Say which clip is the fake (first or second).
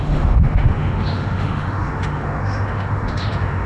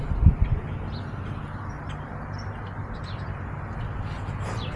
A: first